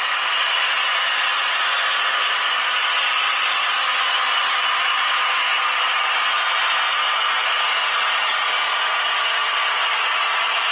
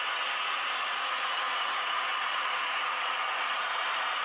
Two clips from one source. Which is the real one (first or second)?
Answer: first